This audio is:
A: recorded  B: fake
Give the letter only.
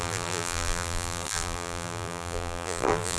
B